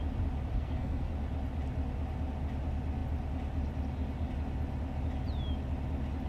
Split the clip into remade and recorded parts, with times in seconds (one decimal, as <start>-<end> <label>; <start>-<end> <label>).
0.0-0.5 recorded; 0.5-1.1 remade; 1.1-6.3 recorded